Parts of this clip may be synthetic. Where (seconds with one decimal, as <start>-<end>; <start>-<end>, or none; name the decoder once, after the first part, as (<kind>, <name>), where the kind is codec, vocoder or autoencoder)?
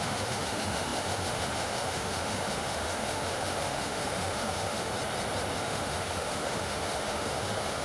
0.0-4.9 (autoencoder, DAC-VAE); 5.6-7.8